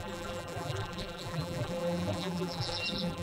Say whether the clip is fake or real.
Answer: fake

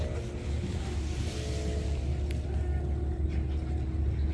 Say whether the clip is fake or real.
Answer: real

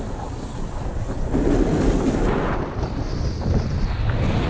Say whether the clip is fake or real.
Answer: real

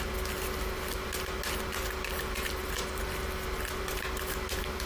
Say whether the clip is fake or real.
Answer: real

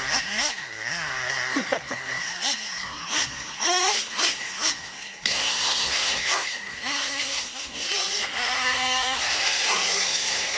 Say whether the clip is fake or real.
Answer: fake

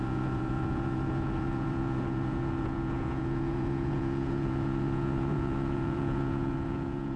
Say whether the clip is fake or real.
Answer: fake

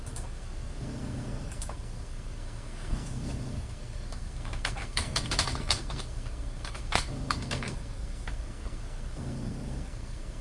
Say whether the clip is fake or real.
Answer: fake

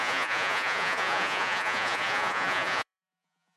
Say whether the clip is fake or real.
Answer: fake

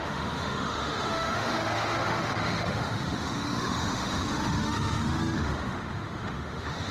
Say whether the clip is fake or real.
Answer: fake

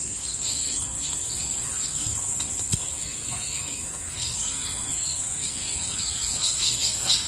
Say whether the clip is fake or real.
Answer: fake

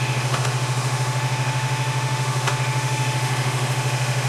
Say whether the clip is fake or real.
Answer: fake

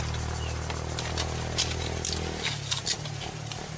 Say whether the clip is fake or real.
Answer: real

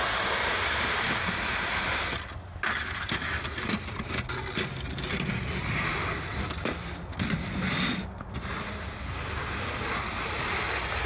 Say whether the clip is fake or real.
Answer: real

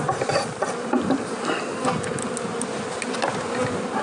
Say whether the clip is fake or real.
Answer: real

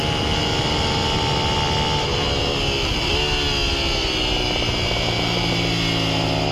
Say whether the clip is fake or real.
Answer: real